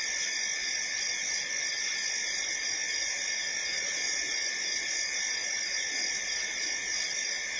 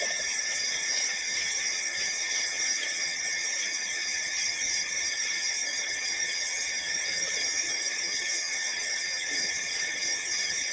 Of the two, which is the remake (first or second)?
second